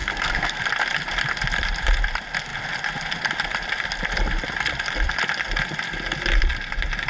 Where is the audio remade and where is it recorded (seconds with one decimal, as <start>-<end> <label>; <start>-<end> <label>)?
0.0-0.6 remade; 0.6-7.1 recorded